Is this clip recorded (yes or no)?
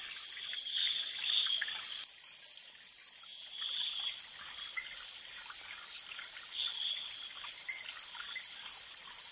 yes